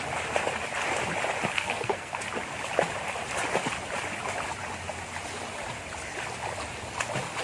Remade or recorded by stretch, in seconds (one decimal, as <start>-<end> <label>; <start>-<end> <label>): 0.0-1.5 recorded; 1.5-2.2 remade; 2.2-7.4 recorded